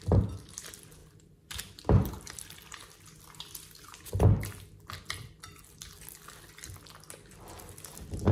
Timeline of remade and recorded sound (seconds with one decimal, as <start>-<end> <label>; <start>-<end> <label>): 0.0-8.3 recorded